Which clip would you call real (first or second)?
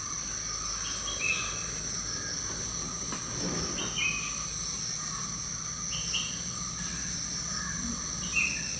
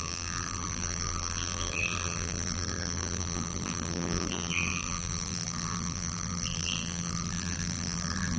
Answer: first